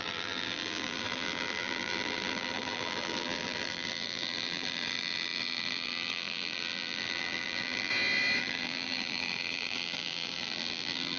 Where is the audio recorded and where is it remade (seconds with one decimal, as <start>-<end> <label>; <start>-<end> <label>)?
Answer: 0.0-7.9 remade; 7.9-8.4 recorded; 8.4-11.2 remade